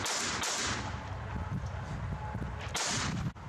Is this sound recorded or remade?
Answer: recorded